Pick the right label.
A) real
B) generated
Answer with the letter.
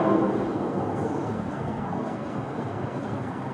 B